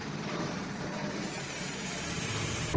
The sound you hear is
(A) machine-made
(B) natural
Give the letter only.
A